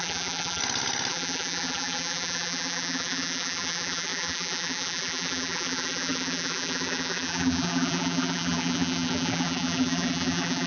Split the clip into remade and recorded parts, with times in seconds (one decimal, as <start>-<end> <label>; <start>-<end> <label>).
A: 0.0-0.6 remade; 0.6-1.1 recorded; 1.1-10.7 remade